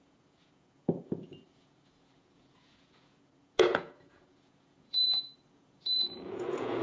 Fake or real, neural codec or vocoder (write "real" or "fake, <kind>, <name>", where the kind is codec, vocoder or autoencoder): fake, vocoder, Vocos